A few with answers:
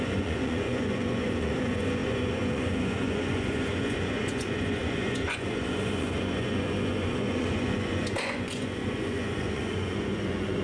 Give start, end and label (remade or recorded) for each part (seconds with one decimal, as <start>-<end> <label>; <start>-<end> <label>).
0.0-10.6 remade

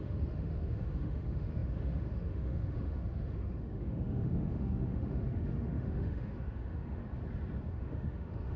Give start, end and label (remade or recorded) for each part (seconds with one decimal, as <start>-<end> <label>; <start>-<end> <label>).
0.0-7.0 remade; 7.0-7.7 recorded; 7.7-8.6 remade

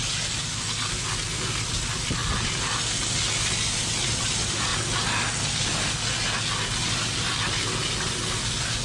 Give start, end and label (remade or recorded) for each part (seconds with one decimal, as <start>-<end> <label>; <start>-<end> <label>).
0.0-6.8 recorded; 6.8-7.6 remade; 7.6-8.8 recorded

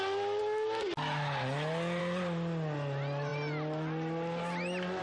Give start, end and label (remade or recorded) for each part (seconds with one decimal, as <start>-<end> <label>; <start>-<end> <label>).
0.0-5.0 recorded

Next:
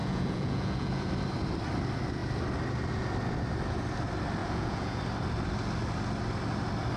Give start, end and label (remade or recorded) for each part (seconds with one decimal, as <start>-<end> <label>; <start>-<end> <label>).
0.0-1.1 remade; 1.1-4.4 recorded; 4.4-5.0 remade; 5.0-7.0 recorded

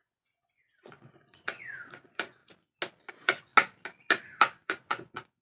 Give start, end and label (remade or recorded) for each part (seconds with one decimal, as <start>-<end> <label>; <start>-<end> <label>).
0.0-2.4 remade; 2.4-3.1 recorded; 3.1-3.5 remade; 3.5-4.1 recorded; 4.1-5.4 remade

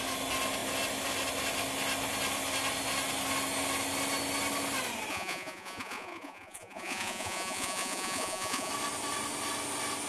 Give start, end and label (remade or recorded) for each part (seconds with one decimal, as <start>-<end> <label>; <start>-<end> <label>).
0.0-5.1 recorded; 5.1-8.7 remade; 8.7-10.1 recorded